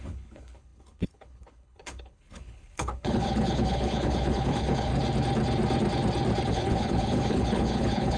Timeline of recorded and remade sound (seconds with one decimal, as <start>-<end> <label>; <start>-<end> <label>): 0.0-4.9 remade; 4.9-6.5 recorded; 6.5-8.2 remade